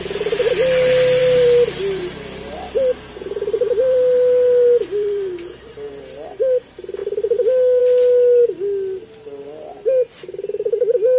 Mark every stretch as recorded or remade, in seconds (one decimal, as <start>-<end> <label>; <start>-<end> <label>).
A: 0.0-1.2 recorded; 1.2-5.9 remade; 5.9-11.2 recorded